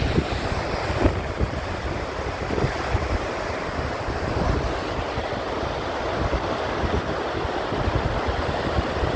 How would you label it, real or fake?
real